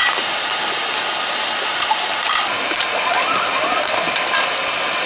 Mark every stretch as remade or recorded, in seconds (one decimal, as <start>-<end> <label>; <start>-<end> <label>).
0.0-5.1 recorded